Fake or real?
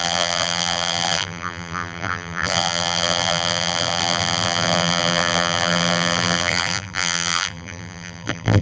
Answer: fake